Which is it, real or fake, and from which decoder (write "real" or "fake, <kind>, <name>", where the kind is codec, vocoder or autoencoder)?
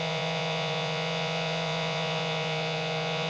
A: fake, vocoder, Vocos